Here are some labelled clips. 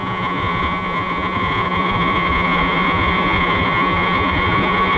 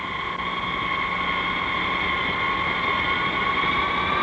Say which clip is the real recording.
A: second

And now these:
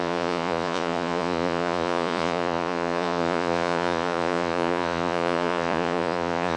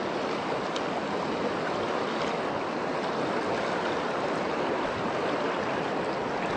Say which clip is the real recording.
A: second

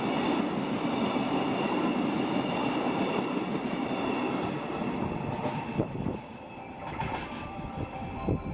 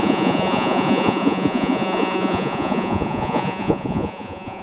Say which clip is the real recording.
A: first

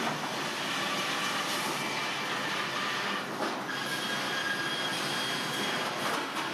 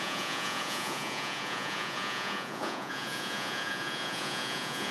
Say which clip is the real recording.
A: first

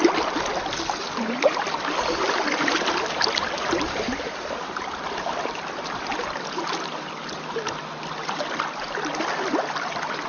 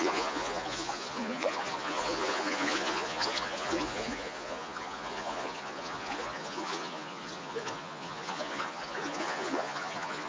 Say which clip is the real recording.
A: first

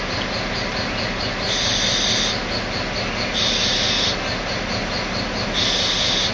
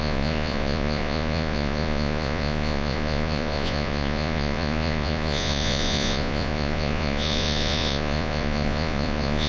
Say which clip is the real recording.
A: first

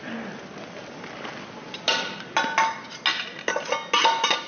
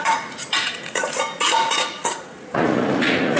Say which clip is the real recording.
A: first